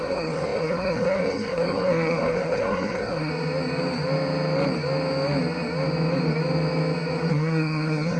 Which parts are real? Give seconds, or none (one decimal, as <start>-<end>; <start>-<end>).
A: 3.3-7.3

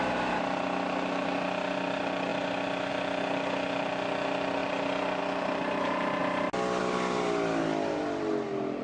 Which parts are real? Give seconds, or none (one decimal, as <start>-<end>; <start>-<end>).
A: 4.6-5.2; 6.2-6.8

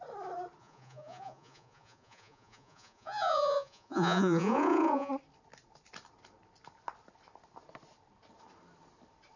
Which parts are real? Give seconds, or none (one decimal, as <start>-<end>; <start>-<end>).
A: 0.0-0.6; 5.1-9.4

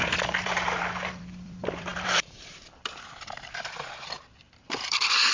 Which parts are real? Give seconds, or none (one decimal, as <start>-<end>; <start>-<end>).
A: none

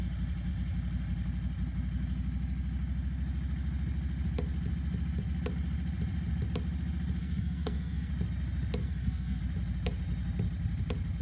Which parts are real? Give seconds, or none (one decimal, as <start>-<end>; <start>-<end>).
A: 0.0-7.2; 8.1-8.8; 9.4-11.2

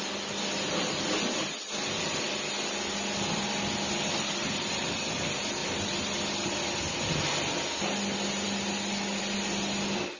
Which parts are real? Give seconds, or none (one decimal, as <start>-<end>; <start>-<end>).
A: 0.0-10.2

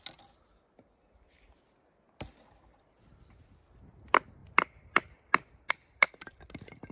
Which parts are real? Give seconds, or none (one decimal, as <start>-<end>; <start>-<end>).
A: 0.0-6.9